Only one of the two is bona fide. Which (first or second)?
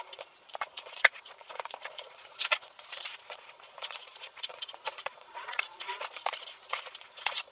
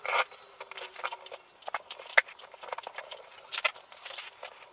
second